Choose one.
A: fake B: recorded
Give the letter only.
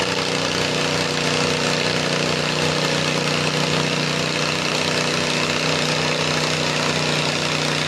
B